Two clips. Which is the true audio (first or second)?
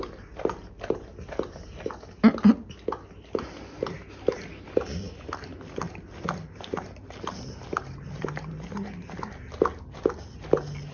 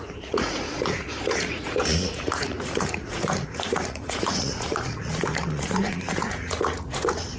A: first